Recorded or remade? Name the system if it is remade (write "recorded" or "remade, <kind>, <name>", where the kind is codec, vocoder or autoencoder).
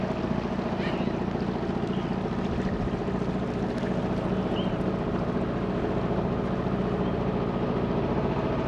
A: recorded